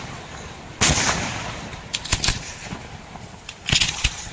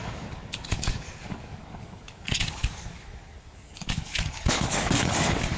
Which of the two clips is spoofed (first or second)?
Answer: second